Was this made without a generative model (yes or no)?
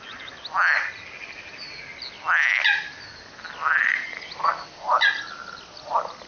yes